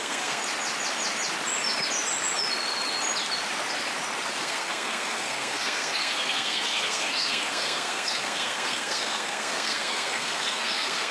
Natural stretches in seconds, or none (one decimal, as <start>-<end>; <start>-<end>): 0.4-4.4